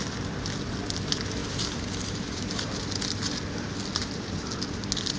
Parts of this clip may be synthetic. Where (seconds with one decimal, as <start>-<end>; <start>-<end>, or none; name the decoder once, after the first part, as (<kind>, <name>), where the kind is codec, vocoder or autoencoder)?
1.4-2.7 (vocoder, BigVGAN v2); 4.0-4.5